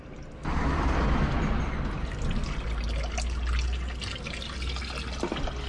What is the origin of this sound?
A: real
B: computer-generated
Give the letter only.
A